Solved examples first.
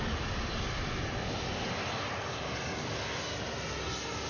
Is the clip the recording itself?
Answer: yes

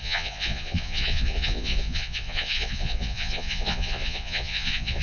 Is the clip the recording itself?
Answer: no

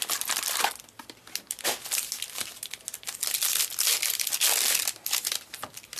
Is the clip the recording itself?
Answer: yes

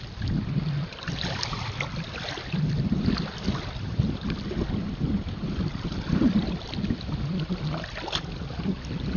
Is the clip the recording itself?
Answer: yes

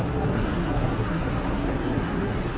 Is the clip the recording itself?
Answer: no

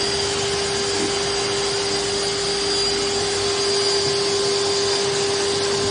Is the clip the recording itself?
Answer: yes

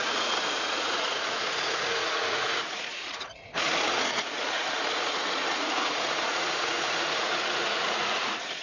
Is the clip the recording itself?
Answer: no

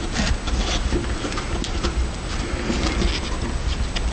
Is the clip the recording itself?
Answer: yes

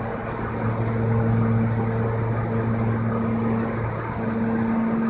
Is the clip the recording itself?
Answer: yes